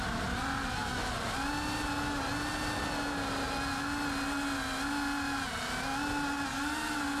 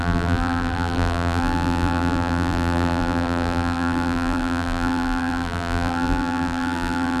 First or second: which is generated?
second